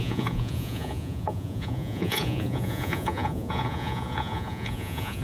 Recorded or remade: remade